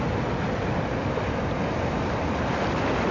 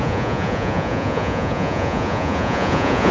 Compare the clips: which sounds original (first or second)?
first